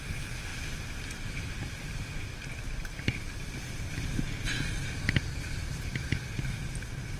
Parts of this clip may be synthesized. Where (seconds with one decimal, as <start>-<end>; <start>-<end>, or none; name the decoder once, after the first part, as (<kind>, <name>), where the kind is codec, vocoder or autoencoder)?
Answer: 0.5-3.9 (vocoder, BigVGAN v2)